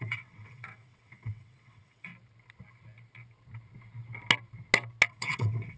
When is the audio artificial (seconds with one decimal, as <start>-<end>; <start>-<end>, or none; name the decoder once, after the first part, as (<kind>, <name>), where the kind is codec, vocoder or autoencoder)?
0.0-2.1 (vocoder, WaveNeXt); 5.1-5.8